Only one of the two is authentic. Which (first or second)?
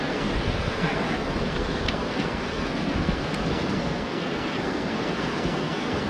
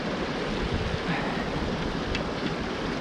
second